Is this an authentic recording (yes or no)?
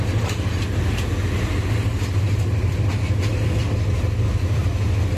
yes